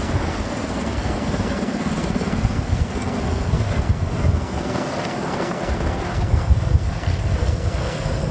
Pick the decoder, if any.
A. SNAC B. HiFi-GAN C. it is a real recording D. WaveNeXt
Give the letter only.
A